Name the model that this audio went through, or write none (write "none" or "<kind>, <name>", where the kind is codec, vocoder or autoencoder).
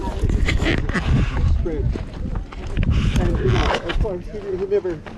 none